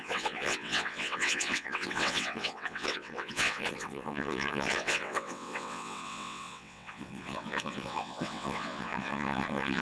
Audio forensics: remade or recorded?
remade